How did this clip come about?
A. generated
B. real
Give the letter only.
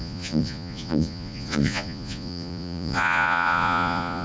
A